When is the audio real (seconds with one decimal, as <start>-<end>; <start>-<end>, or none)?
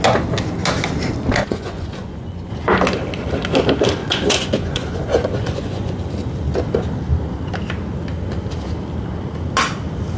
0.0-1.4; 2.5-4.0; 6.0-10.2